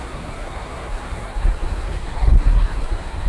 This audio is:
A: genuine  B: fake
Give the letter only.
B